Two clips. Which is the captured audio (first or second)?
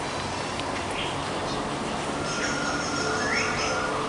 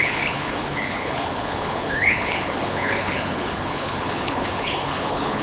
first